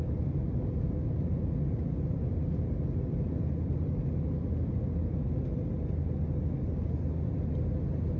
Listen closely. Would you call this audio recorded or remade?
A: recorded